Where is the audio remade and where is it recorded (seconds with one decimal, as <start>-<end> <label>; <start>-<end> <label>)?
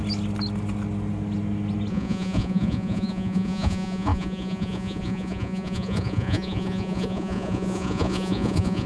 0.0-1.9 recorded; 1.9-8.9 remade